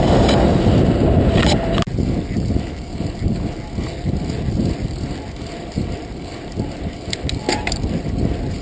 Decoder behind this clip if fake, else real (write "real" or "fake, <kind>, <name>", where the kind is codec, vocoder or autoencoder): real